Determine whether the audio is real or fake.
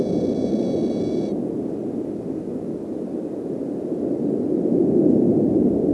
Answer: real